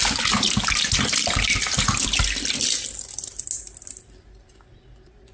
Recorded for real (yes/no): yes